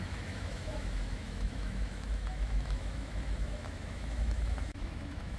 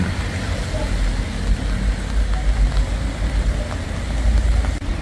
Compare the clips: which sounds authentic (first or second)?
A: second